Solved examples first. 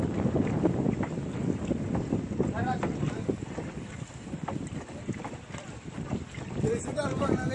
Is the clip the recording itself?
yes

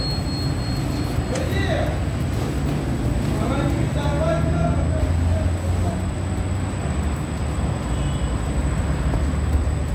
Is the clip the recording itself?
yes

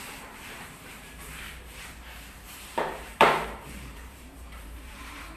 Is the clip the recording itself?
no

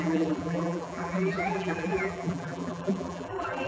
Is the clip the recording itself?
no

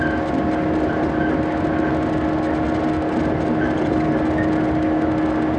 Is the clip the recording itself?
yes